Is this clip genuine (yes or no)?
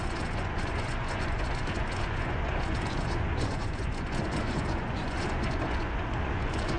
no